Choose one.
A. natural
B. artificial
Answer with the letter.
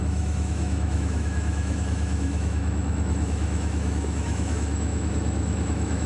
B